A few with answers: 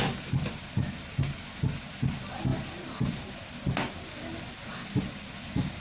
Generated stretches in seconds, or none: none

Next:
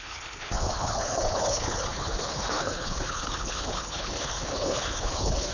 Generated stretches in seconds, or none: 0.0-5.5 (codec, HILCodec)

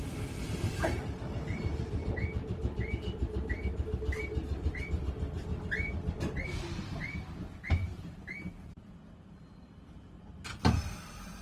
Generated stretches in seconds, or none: 1.7-4.8 (vocoder, BigVGAN v2); 7.8-8.9